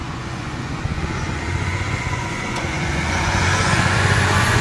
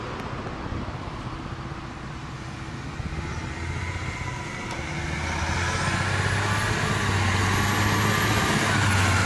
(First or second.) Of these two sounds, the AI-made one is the first